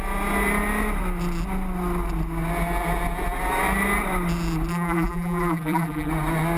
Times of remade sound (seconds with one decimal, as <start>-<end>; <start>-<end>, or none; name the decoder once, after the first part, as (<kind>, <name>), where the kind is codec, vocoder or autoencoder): 4.7-6.1 (vocoder, BigVGAN v2)